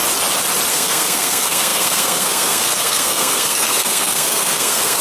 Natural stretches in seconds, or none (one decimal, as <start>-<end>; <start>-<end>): 0.0-0.7